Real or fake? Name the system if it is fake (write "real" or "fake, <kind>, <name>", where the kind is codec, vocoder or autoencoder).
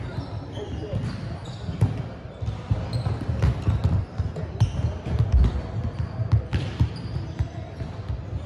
real